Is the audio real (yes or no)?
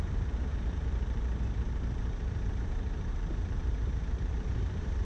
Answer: no